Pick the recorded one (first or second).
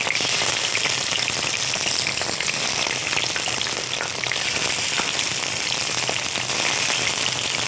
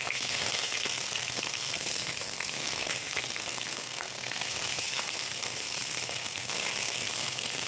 first